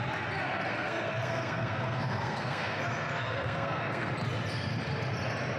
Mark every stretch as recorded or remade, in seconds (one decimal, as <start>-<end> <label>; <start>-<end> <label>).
0.0-0.7 recorded; 0.7-4.1 remade; 4.1-5.6 recorded